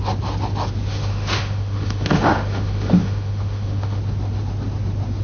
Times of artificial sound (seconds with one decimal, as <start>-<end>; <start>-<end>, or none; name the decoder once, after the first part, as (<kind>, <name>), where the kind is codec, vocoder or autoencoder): 0.9-4.0 (autoencoder, DAC-VAE)